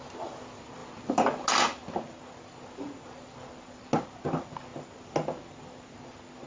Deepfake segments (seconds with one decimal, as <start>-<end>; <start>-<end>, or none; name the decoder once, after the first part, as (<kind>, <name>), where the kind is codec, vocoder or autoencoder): none